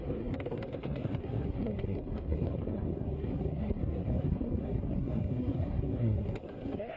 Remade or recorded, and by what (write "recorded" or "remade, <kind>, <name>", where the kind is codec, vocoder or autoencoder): remade, codec, SNAC